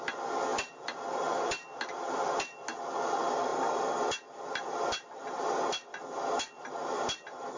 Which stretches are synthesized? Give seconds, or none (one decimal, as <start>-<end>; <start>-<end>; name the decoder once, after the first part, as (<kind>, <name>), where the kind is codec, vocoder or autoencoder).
none